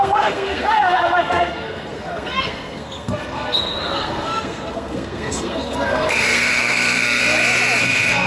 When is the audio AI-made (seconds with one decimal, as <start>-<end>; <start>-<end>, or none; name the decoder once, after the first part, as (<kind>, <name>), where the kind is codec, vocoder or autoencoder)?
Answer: 0.0-7.2 (codec, SNAC); 7.8-8.3